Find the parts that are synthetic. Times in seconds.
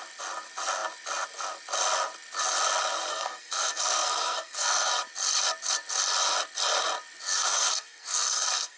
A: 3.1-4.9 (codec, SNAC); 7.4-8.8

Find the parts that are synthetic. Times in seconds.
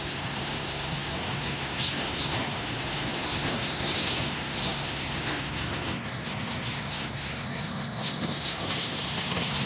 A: 0.0-9.7 (codec, SNAC)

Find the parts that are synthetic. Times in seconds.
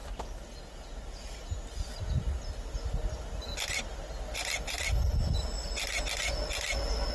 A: none